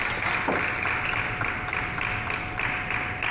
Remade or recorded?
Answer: recorded